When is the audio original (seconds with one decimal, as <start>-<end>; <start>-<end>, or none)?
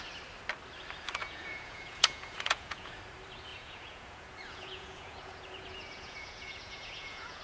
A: 0.0-1.2; 3.0-3.5